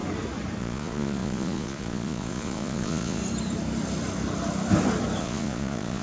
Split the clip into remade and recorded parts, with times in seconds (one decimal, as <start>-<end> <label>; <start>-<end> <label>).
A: 0.0-0.6 recorded; 0.6-3.2 remade; 3.2-5.2 recorded; 5.2-6.0 remade